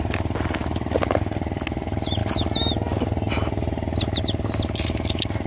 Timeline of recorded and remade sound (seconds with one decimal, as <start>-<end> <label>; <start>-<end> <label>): 0.0-5.5 recorded